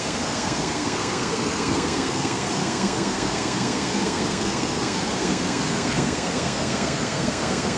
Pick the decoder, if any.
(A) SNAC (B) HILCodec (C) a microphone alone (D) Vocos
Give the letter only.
A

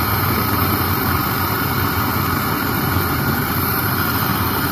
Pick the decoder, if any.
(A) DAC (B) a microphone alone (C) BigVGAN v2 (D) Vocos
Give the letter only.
C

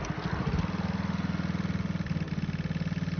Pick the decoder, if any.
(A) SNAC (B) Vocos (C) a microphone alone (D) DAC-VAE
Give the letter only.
C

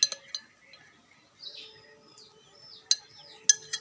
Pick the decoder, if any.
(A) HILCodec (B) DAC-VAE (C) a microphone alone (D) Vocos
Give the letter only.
C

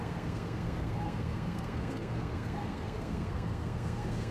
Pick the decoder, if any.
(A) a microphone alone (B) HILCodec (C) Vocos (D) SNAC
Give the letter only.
D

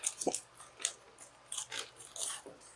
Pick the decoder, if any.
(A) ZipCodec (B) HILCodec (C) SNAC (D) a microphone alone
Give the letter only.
D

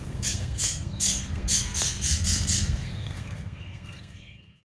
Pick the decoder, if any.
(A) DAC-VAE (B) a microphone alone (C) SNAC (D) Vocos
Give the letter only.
C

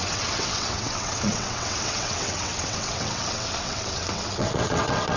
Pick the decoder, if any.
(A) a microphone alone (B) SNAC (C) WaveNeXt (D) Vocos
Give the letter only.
C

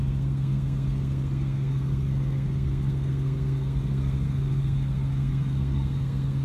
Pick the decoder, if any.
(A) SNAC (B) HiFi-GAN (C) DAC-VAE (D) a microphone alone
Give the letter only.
A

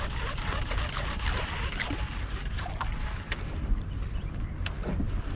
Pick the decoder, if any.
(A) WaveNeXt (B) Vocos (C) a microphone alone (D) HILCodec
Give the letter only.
C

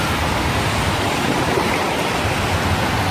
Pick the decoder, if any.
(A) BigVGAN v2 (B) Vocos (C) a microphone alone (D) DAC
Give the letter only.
C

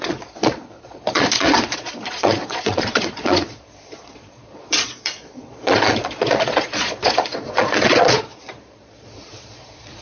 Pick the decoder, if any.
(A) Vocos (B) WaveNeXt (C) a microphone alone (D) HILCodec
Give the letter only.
A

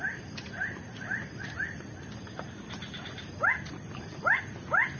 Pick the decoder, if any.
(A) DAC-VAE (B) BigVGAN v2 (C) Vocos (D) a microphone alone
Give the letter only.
D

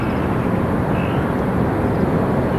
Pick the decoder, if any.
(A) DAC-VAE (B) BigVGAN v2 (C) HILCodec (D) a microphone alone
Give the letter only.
D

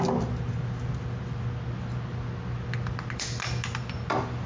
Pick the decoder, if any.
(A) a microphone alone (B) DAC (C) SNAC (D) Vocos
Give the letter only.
A